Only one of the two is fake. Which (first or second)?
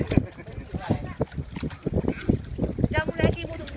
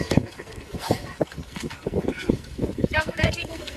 second